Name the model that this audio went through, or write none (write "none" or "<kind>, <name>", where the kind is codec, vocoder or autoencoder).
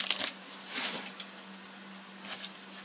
none